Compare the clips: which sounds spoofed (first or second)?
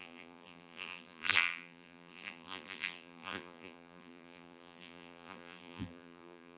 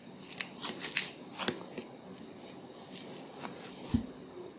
first